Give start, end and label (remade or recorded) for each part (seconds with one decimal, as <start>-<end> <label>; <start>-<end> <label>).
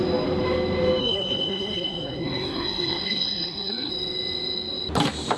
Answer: 0.0-1.0 recorded; 1.0-3.9 remade; 3.9-5.4 recorded